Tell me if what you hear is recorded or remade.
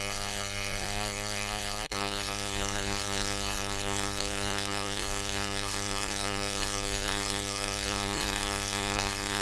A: remade